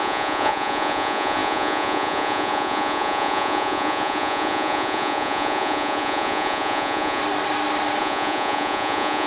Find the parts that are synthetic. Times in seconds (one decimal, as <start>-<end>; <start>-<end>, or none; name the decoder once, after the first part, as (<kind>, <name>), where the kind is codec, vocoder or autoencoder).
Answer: 0.0-7.2 (vocoder, Vocos); 8.0-9.3